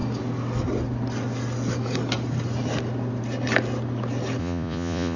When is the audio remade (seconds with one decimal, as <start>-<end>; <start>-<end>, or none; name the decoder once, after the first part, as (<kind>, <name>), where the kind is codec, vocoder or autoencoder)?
4.4-5.2 (vocoder, Vocos)